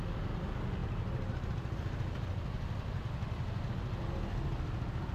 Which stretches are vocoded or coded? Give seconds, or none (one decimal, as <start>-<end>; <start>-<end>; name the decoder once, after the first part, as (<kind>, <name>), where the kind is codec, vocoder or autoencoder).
none